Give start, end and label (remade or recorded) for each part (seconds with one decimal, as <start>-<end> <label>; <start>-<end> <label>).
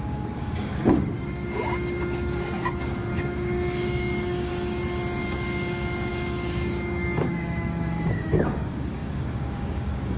0.0-4.5 remade; 4.5-5.2 recorded; 5.2-10.2 remade